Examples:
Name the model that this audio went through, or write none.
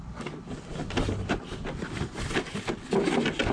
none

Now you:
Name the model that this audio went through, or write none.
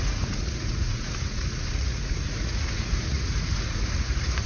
vocoder, Vocos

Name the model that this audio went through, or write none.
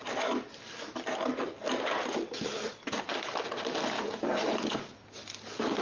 none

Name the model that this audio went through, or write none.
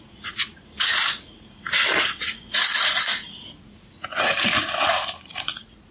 vocoder, Vocos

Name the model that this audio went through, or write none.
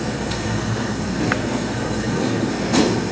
codec, SNAC